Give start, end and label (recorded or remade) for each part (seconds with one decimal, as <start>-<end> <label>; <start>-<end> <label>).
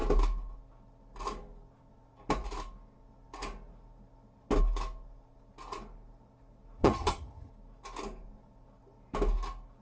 0.0-6.8 recorded; 6.8-7.5 remade; 7.5-9.8 recorded